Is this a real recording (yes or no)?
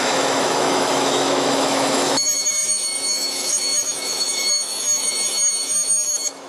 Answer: no